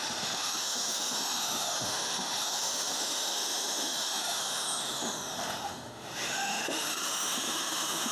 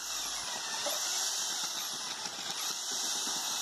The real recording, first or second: second